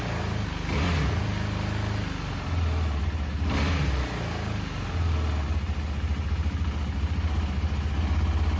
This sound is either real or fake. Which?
real